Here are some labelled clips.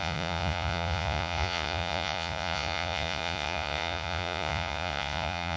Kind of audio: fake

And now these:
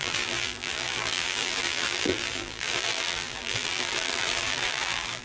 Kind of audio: fake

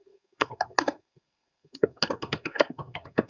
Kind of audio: fake